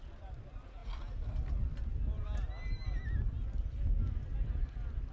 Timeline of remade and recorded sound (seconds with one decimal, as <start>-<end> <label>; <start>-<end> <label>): 0.0-5.1 recorded